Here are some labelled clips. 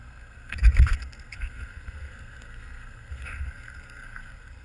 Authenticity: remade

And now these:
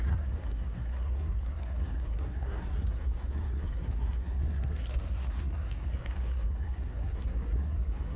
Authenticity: remade